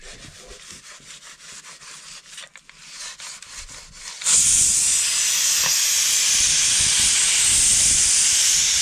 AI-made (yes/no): no